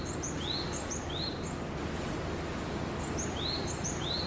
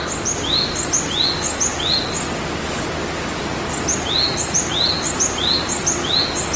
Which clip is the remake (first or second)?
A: first